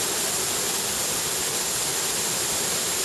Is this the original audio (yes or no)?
no